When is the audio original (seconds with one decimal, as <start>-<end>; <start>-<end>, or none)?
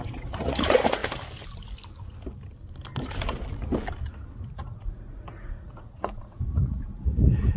1.0-4.5